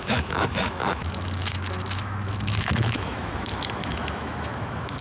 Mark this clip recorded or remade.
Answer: remade